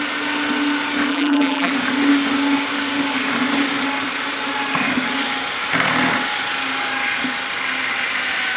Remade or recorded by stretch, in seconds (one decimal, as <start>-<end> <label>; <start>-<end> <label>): 0.0-1.1 recorded; 1.1-1.7 remade; 1.7-8.6 recorded